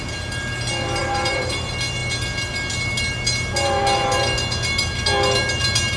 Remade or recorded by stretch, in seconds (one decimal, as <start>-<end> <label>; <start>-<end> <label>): 0.0-1.0 recorded; 1.0-1.5 remade; 1.5-6.0 recorded

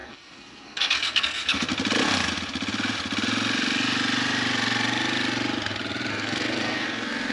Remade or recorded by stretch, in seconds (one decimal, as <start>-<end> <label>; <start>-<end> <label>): 0.0-1.7 remade; 1.7-6.1 recorded; 6.1-7.3 remade

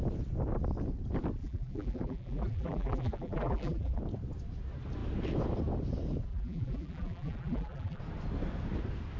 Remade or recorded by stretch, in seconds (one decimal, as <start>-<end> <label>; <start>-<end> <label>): 0.0-1.4 recorded; 1.4-4.0 remade; 4.0-6.3 recorded; 6.3-8.0 remade; 8.0-9.2 recorded

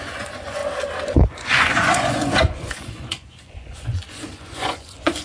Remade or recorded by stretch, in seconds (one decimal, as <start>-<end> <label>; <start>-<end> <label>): 0.0-0.6 remade; 0.6-1.1 recorded; 1.1-5.2 remade

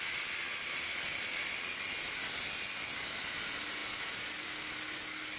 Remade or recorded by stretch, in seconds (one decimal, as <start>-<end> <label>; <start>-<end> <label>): 0.0-5.4 recorded

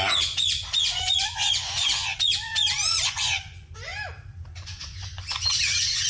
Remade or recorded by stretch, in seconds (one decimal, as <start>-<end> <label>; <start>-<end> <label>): 0.0-3.9 remade; 3.9-4.6 recorded; 4.6-6.1 remade